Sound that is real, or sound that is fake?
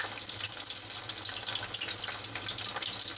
real